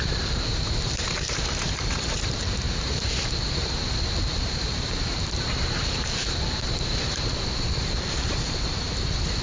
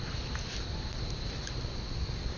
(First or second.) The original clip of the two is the second